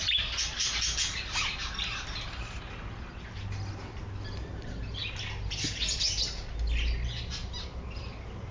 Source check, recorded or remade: recorded